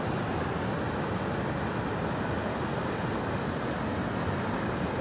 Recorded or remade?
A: recorded